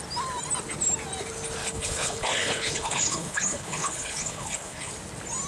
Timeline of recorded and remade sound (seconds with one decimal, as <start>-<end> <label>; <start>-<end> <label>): 0.0-1.6 recorded; 1.6-4.9 remade; 4.9-5.5 recorded